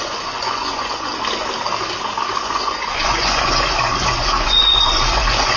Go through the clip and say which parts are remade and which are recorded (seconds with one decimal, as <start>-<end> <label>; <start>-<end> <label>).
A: 0.0-1.1 remade; 1.1-2.4 recorded; 2.4-5.6 remade